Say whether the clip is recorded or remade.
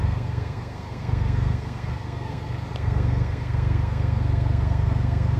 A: remade